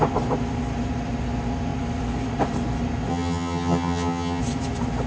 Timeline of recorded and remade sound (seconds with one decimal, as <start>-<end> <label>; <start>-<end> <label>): 0.0-3.1 recorded; 3.1-4.4 remade; 4.4-5.1 recorded